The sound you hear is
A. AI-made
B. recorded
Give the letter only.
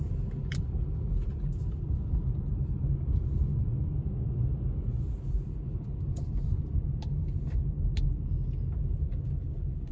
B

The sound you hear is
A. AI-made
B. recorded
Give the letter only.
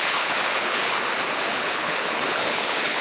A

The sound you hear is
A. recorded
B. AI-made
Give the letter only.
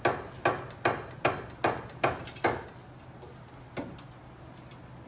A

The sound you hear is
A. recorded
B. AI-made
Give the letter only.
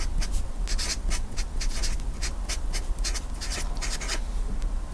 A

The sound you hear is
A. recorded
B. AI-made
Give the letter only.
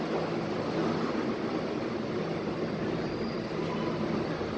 A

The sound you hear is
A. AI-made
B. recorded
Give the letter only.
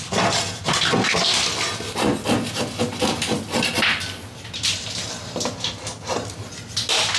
B